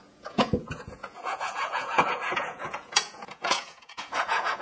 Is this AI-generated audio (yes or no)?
yes